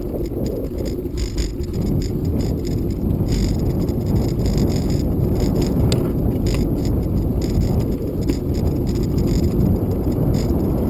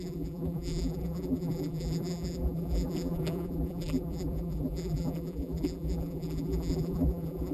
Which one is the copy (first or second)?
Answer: second